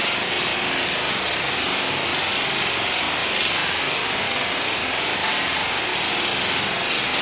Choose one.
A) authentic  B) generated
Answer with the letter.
A